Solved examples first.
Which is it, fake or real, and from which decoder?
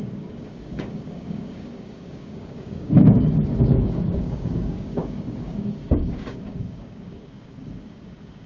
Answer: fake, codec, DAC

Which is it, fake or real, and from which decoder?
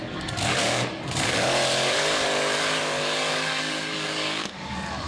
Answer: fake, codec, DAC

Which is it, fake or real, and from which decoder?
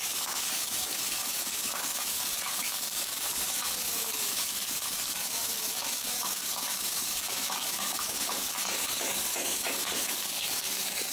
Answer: fake, codec, DAC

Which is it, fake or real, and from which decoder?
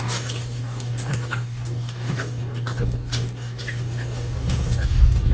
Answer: fake, codec, DAC